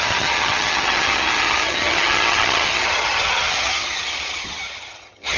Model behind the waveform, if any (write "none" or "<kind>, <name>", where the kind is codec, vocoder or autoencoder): vocoder, HiFi-GAN